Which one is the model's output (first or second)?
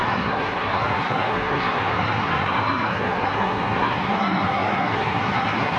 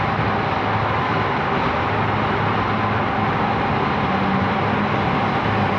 first